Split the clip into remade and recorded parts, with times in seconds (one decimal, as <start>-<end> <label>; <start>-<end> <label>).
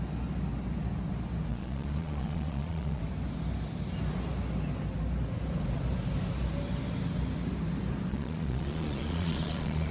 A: 0.0-1.5 recorded; 1.5-3.0 remade; 3.0-8.1 recorded; 8.1-9.9 remade